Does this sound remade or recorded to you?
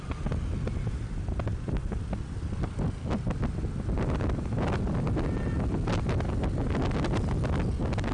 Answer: recorded